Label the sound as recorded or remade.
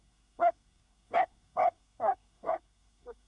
remade